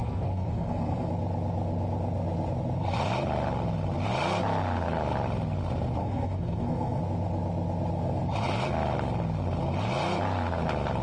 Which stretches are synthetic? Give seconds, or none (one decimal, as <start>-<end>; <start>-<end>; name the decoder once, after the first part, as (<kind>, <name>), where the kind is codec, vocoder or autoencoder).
0.0-1.1 (codec, SNAC); 6.0-7.0